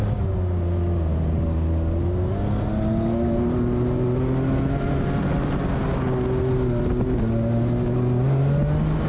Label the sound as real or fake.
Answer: real